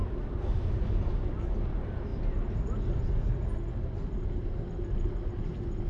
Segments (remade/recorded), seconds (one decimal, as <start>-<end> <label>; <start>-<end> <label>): 0.0-5.9 recorded